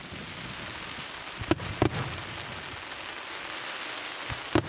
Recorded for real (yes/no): yes